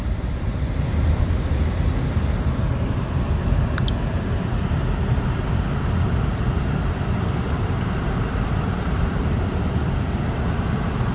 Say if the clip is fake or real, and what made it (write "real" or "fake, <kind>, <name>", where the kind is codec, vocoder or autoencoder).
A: fake, vocoder, BigVGAN v2